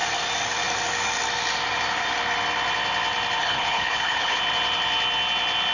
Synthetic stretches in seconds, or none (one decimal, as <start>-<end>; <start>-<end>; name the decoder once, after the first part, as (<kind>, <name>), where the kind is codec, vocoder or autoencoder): 3.4-4.4 (codec, HILCodec)